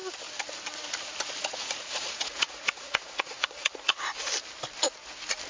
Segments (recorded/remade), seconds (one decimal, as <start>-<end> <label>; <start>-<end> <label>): 0.0-1.4 recorded; 1.4-3.9 remade; 3.9-5.5 recorded